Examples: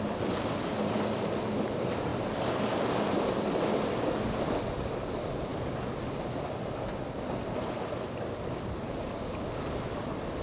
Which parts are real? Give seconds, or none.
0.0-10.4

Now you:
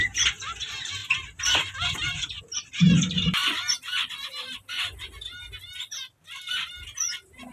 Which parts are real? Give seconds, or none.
0.0-6.1; 6.7-7.5

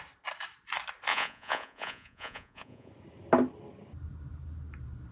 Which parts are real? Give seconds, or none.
0.0-1.1; 2.9-5.1